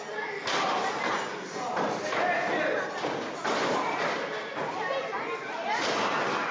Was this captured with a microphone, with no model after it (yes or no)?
yes